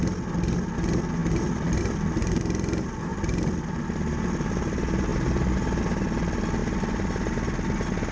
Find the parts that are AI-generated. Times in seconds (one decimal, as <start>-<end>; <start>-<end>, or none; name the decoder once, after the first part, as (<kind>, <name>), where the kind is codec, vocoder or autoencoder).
1.2-1.8 (vocoder, BigVGAN v2)